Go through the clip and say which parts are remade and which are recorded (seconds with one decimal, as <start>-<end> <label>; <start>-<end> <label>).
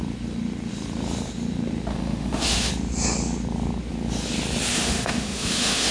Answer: 0.0-1.9 recorded; 1.9-2.7 remade; 2.7-4.7 recorded; 4.7-5.9 remade